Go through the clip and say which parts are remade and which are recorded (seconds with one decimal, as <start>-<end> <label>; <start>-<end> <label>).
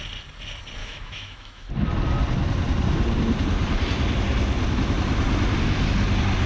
0.0-0.8 recorded; 0.8-1.7 remade; 1.7-6.5 recorded